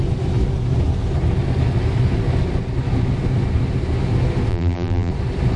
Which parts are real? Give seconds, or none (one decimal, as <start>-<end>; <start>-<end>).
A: 0.0-4.5; 5.1-5.6